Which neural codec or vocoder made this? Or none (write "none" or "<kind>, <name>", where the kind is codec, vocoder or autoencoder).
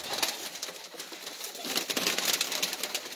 none